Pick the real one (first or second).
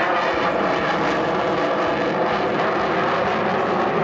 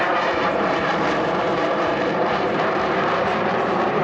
first